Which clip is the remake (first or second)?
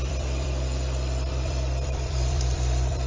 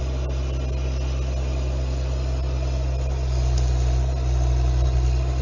first